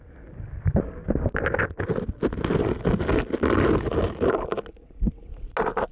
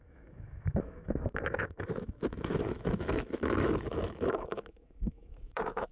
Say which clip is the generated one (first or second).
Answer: second